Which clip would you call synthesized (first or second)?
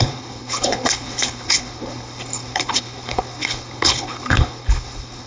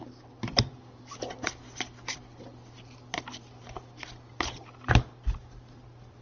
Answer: first